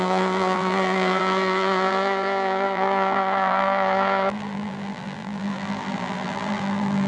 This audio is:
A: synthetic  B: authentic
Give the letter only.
A